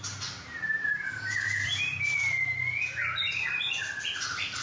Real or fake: fake